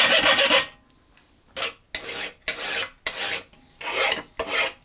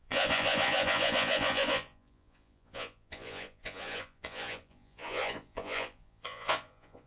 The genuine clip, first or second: first